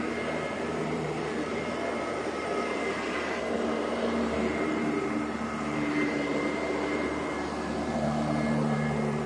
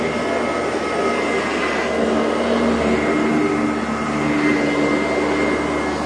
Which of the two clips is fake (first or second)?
first